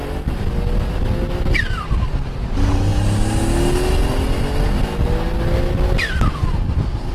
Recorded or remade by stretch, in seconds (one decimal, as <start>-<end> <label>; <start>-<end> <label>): 0.0-7.1 recorded

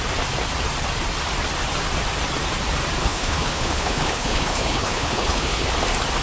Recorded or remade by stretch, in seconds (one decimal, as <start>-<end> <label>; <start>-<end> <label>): 0.0-3.0 recorded; 3.0-5.7 remade; 5.7-6.2 recorded

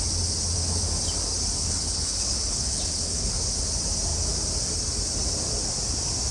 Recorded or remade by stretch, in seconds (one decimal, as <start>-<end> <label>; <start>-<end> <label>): 0.0-1.6 recorded; 1.6-3.3 remade; 3.3-6.3 recorded

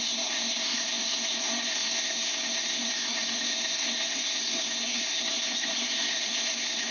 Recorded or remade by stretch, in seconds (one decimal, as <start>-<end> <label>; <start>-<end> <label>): 0.0-6.9 remade

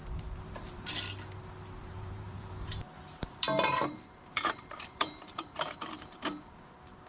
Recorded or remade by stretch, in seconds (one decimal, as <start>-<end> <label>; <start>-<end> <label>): 0.0-0.9 remade; 0.9-1.8 recorded; 1.8-5.7 remade; 5.7-7.1 recorded

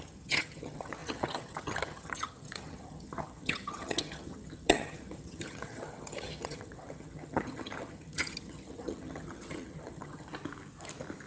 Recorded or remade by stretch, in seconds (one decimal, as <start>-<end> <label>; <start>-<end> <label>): 0.0-10.3 remade; 10.3-11.3 recorded

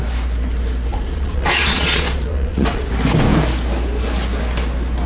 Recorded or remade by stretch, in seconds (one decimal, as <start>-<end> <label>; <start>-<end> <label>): 0.0-0.9 recorded; 0.9-2.9 remade; 2.9-5.1 recorded